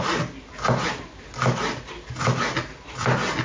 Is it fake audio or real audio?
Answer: real